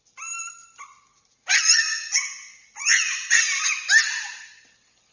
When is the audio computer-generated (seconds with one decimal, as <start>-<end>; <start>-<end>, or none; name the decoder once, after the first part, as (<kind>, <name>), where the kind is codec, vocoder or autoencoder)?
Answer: 1.1-3.4 (vocoder, Vocos)